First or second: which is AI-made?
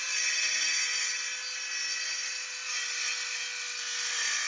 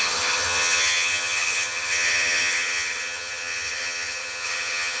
second